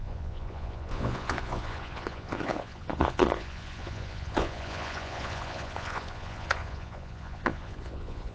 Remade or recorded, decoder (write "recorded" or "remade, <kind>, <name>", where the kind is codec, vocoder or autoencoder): remade, vocoder, Vocos